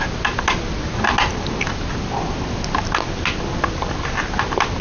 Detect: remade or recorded recorded